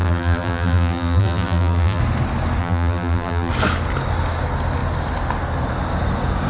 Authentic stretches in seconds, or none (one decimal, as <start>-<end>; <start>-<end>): 2.0-2.6; 3.5-6.5